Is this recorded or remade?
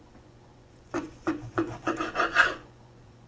remade